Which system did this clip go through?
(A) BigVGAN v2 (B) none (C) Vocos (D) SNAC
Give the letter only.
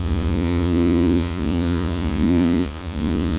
C